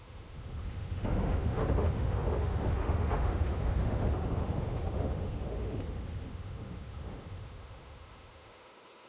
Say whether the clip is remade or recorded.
remade